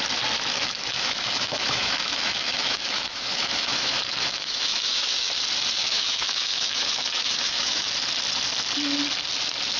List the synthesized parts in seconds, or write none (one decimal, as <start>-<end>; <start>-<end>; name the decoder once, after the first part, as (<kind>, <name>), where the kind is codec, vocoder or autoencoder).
0.5-5.3 (autoencoder, DAC-VAE); 5.8-7.9